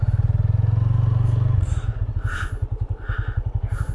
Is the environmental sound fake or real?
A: real